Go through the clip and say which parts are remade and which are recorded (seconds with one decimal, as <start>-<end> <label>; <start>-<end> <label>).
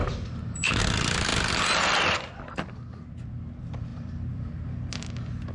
0.0-0.8 remade; 0.8-3.9 recorded; 3.9-4.9 remade; 4.9-5.5 recorded